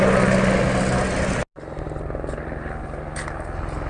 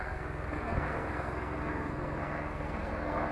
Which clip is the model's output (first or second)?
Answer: second